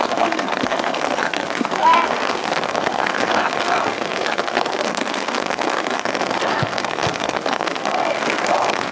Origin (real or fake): fake